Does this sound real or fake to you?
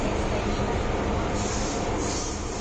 real